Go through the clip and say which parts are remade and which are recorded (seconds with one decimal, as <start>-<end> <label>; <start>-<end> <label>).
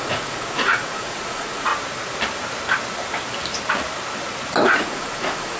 0.0-1.7 remade; 1.7-4.6 recorded; 4.6-5.6 remade